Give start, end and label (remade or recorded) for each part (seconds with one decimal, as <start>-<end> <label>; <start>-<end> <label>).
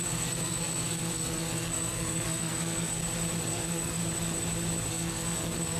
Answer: 0.0-3.0 remade; 3.0-3.5 recorded; 3.5-4.0 remade; 4.0-4.9 recorded; 4.9-5.8 remade